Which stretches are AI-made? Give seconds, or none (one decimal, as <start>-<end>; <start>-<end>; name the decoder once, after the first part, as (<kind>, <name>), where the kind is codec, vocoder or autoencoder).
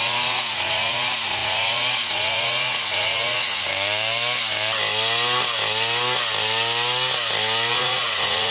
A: 0.0-3.7 (vocoder, Vocos); 7.7-8.5